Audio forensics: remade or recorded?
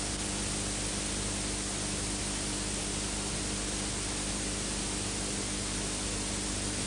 recorded